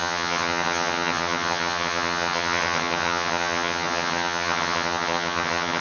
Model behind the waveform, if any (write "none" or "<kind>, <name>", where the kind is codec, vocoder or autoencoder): vocoder, HiFi-GAN